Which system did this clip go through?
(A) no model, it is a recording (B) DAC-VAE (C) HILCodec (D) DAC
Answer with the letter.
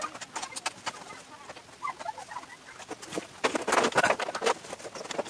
A